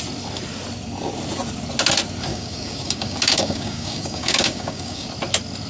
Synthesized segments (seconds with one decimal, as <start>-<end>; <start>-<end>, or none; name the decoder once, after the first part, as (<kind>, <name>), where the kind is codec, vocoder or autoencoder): 2.3-5.1 (codec, DAC)